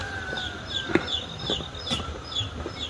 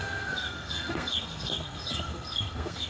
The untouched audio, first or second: first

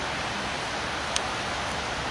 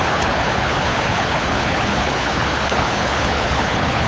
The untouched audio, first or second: first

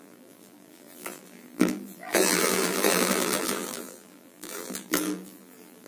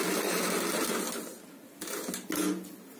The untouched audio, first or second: second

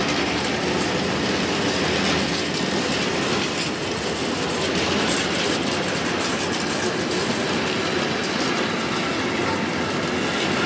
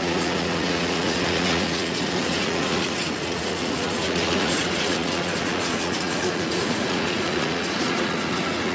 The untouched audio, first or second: first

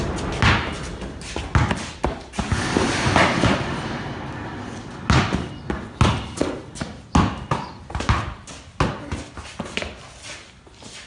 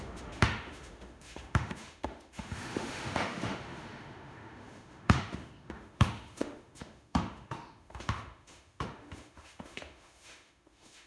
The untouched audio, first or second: first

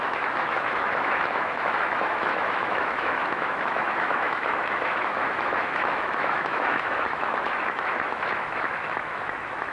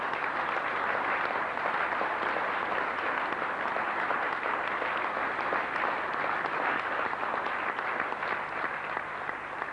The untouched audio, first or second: second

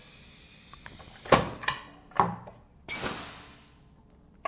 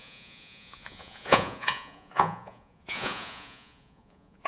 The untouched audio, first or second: first